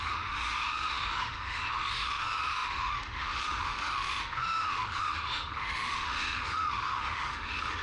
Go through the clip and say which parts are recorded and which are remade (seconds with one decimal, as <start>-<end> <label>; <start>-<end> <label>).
0.0-7.8 remade